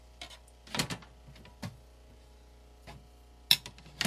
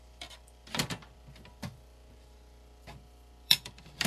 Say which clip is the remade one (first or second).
second